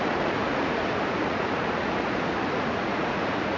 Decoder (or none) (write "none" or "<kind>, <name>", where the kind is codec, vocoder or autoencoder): vocoder, Vocos